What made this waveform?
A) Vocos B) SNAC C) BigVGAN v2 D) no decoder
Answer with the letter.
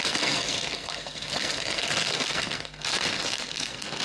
B